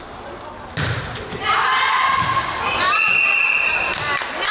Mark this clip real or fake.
real